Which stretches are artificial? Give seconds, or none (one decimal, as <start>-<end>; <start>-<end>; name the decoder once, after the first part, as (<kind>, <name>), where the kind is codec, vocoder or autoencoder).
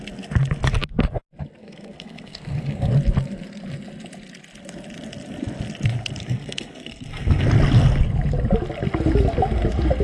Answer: 1.6-2.9 (codec, SNAC); 6.2-7.4